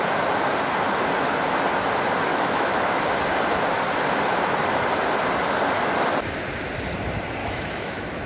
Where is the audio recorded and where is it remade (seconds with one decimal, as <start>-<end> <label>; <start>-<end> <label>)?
0.0-2.3 recorded; 2.3-3.0 remade; 3.0-7.4 recorded; 7.4-8.3 remade